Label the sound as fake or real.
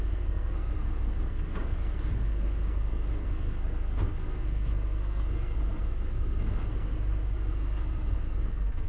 fake